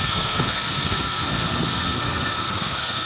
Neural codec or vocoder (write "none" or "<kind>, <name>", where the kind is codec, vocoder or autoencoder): codec, SNAC